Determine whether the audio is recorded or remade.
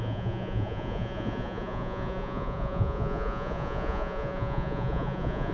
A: remade